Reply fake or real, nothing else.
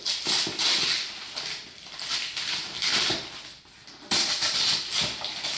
real